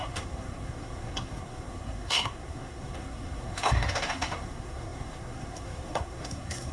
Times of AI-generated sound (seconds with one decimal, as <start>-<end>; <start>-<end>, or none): 0.0-6.7